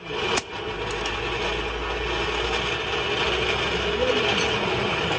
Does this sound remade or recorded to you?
recorded